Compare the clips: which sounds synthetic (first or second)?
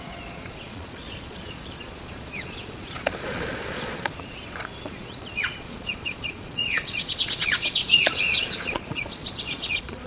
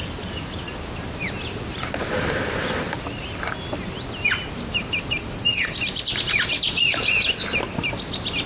first